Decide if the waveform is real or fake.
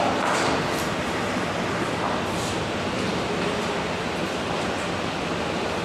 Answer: real